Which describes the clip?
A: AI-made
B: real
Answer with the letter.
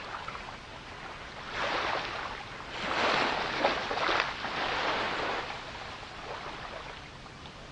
B